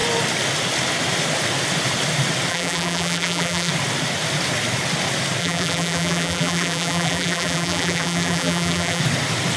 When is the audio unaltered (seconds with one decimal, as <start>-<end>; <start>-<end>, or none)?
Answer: 0.0-2.5; 3.7-5.4; 9.0-9.6